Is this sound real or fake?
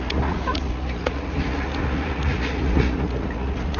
fake